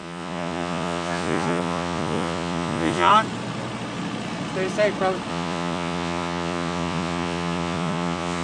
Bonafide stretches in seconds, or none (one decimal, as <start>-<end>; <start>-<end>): 3.1-5.3